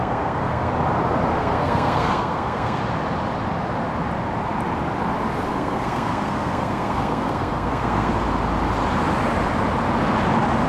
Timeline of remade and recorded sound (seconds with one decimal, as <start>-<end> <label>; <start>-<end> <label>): 0.0-0.7 remade; 0.7-1.4 recorded; 1.4-2.8 remade; 2.8-5.5 recorded; 5.5-8.1 remade; 8.1-10.7 recorded